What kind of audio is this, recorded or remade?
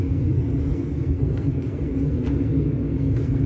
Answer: remade